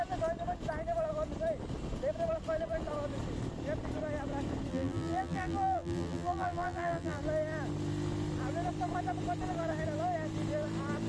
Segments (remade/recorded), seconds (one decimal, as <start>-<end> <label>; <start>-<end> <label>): 0.0-4.7 recorded; 4.7-7.2 remade; 7.2-11.1 recorded